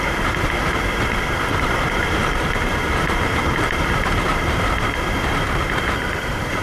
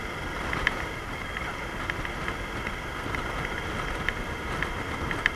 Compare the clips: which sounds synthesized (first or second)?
first